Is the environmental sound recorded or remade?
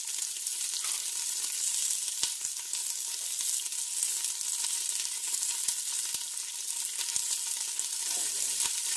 recorded